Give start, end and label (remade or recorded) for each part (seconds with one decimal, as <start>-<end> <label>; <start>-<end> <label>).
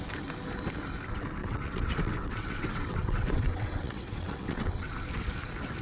0.0-1.4 recorded; 1.4-4.9 remade; 4.9-5.8 recorded